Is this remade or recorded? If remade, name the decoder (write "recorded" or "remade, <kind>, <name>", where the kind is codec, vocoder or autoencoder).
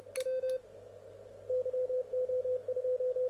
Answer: recorded